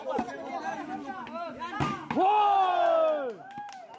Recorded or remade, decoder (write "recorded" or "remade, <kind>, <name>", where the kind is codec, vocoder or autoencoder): recorded